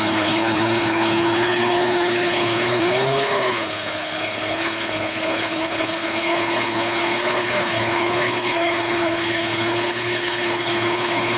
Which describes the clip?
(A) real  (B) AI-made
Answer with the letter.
B